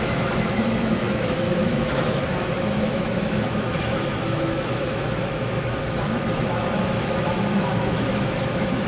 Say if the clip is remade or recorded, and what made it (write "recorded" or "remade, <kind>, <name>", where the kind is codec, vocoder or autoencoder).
remade, autoencoder, DAC-VAE